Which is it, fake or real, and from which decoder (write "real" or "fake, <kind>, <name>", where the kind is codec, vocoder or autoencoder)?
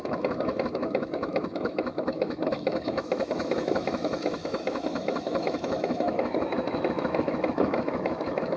fake, autoencoder, DAC-VAE